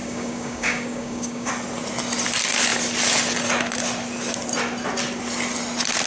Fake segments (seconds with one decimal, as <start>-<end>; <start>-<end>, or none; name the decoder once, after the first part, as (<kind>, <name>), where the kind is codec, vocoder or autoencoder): 0.0-1.5 (codec, DAC)